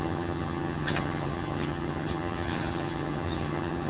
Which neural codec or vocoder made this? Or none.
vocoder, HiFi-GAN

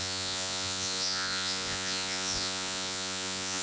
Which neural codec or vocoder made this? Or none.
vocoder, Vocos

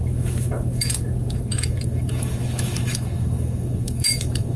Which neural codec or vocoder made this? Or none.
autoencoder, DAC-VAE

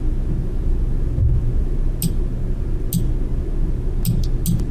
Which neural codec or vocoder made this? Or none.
none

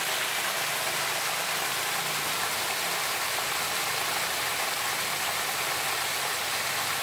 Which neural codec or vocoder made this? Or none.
none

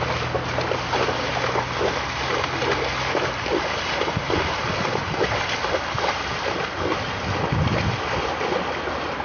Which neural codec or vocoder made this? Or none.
none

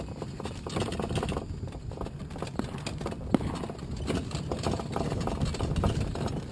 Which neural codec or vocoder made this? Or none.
none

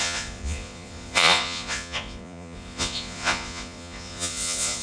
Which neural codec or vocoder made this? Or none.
vocoder, Vocos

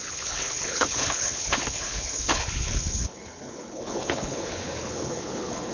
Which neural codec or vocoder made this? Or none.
codec, HILCodec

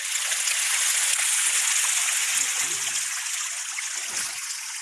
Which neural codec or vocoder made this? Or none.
vocoder, Vocos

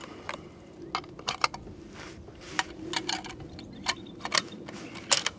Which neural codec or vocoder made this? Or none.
none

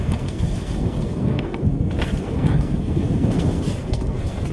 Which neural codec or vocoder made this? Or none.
codec, SNAC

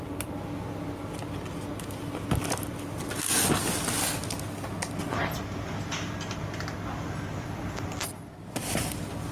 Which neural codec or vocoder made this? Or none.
none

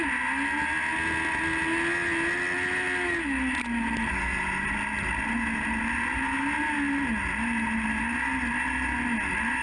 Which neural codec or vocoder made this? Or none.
none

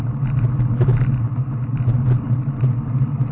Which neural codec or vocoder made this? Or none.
none